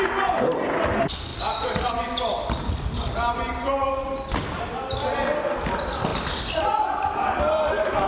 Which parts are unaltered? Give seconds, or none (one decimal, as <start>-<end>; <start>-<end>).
0.0-8.1